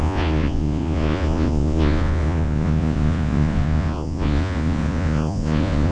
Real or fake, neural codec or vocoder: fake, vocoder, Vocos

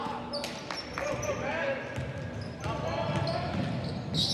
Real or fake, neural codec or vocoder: real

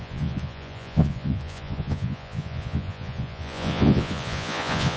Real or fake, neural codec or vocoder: fake, vocoder, Vocos